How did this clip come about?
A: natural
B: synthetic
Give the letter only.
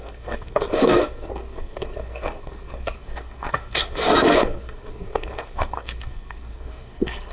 B